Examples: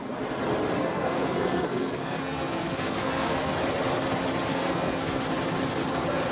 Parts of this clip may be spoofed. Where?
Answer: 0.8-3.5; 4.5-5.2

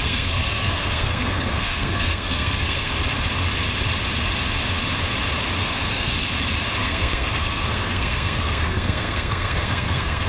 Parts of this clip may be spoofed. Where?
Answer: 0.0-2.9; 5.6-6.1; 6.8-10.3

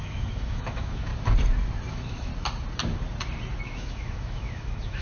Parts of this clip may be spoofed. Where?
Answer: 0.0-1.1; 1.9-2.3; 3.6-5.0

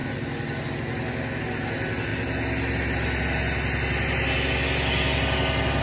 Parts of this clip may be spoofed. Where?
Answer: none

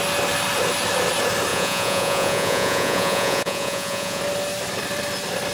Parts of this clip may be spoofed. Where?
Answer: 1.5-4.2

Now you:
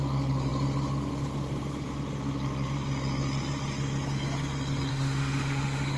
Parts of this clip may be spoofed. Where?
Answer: 4.9-6.0

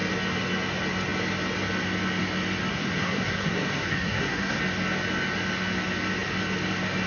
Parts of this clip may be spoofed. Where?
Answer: 2.7-4.6

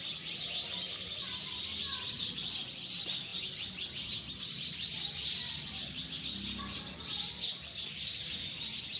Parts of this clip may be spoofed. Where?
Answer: none